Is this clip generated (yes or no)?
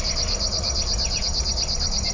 yes